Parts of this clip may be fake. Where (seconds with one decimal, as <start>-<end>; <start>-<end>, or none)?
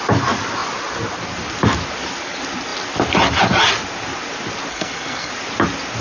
4.7-5.3